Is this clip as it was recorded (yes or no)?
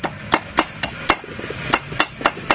yes